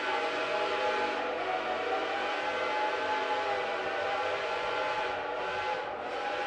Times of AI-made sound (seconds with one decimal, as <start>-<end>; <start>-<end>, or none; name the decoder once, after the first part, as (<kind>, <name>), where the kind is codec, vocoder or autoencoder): 0.0-0.5 (vocoder, Vocos); 4.4-5.2; 6.1-6.5